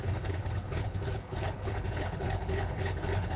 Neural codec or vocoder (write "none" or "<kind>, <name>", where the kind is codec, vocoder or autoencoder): codec, HILCodec